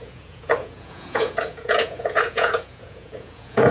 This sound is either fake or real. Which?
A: fake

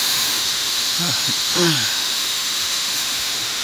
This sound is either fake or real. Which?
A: fake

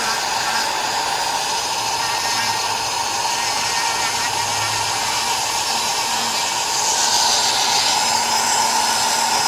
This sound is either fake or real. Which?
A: real